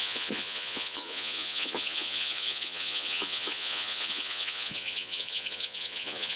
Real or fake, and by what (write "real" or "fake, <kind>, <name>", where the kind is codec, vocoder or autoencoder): fake, vocoder, Vocos